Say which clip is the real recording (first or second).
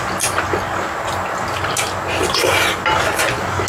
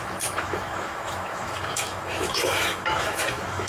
first